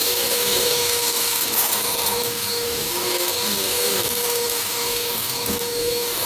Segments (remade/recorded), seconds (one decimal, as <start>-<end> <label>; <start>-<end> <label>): 0.0-6.3 remade